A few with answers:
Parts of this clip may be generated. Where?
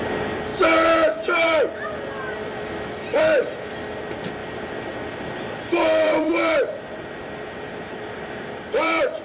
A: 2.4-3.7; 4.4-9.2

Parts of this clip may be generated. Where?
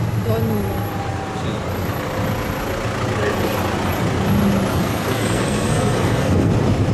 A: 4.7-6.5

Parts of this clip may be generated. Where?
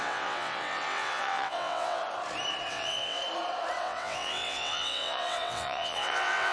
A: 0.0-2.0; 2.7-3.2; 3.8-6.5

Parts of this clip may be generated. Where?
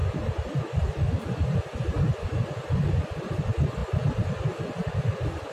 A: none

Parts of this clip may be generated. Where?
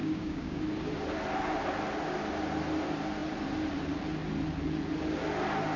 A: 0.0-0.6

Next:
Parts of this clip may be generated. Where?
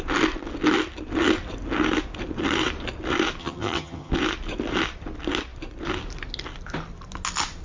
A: 3.4-4.1